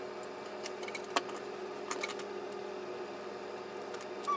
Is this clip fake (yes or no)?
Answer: no